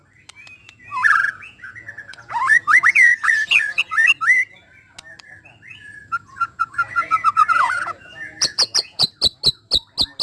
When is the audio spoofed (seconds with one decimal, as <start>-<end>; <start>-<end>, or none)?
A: 0.6-4.1; 5.8-9.1